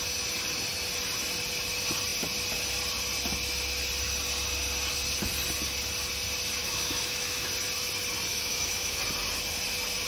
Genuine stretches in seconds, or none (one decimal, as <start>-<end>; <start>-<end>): 0.0-6.6; 7.5-8.3; 9.0-10.1